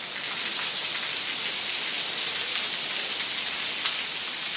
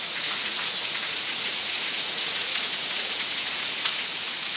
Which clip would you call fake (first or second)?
second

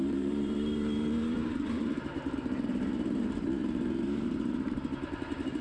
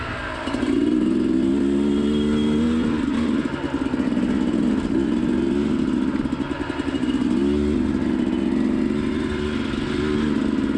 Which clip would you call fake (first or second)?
first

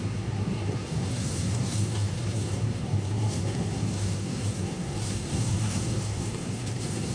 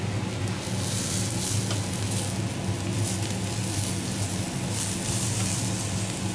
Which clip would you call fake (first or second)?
first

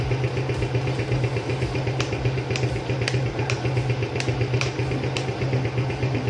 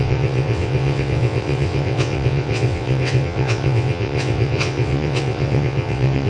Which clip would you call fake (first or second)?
second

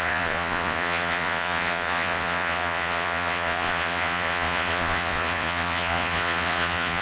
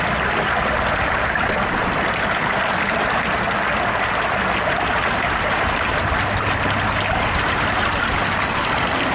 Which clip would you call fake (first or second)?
first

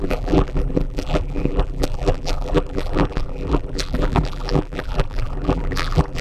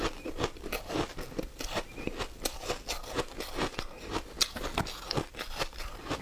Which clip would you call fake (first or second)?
first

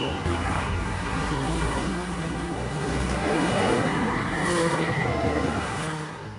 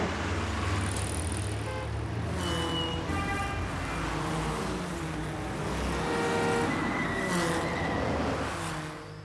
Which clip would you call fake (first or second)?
first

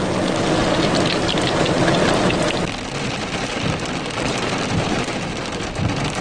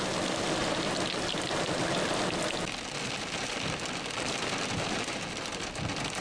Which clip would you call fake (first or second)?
second